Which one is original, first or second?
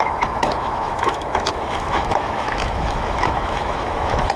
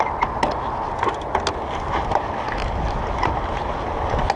second